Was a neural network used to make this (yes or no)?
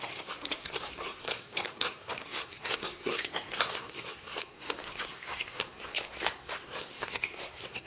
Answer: yes